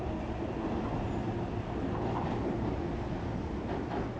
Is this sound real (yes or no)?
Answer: yes